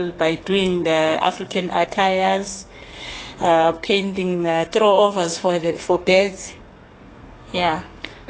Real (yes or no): no